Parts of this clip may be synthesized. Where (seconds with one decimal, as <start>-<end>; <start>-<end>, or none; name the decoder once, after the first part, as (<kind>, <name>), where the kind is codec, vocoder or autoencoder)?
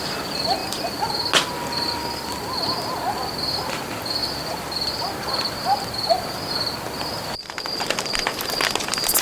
none